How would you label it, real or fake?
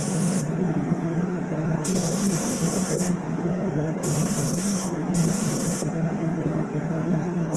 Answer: fake